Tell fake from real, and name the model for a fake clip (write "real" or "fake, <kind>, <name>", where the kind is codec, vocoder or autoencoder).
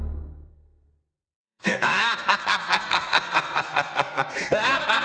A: fake, codec, SNAC